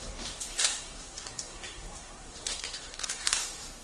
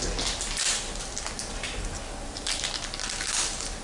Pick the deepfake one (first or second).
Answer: first